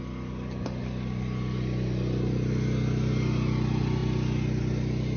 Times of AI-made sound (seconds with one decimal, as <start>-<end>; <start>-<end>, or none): none